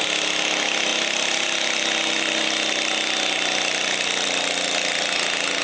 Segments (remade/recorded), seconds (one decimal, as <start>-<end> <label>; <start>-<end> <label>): 0.0-5.6 recorded